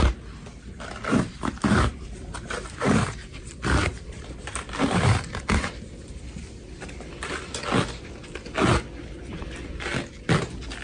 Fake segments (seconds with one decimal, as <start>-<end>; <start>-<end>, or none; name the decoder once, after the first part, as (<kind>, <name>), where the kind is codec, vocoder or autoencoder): 1.1-6.2 (vocoder, BigVGAN v2)